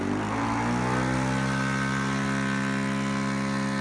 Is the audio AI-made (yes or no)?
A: no